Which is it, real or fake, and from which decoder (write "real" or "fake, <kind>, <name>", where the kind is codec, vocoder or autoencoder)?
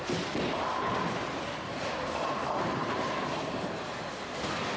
real